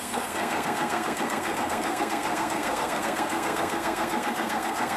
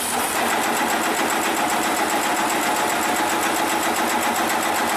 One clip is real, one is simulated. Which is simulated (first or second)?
first